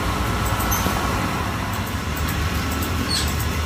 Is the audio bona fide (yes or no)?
no